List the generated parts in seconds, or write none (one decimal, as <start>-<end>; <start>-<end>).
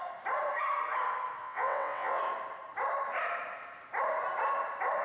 1.4-2.2